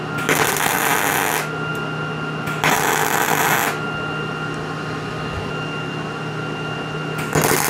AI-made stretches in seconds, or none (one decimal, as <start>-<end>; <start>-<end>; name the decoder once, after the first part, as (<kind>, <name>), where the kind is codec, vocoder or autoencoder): none